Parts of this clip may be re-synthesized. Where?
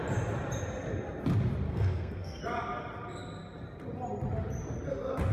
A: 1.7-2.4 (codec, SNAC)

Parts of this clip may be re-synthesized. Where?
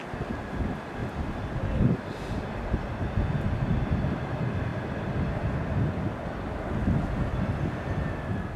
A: 4.7-5.4 (vocoder, BigVGAN v2); 7.3-8.1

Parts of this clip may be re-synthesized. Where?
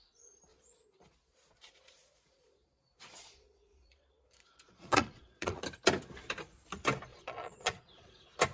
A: 0.5-5.6 (vocoder, Vocos); 7.1-8.1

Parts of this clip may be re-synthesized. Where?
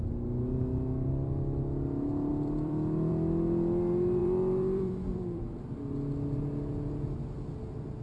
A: 2.3-3.1 (vocoder, BigVGAN v2); 4.2-5.7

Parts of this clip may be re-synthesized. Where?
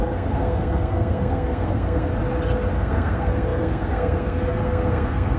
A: 0.0-2.1 (codec, SNAC); 2.7-5.4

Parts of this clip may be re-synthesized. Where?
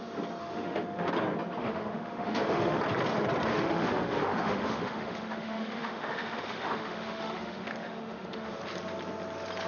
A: 0.4-1.1 (autoencoder, DAC-VAE); 1.6-2.8; 3.5-8.6